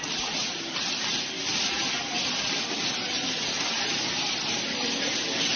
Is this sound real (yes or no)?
yes